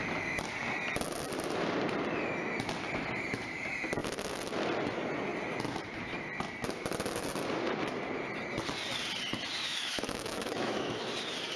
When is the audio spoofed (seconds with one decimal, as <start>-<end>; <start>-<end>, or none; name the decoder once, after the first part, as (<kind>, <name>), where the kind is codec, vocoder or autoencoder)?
9.7-11.1 (autoencoder, DAC-VAE)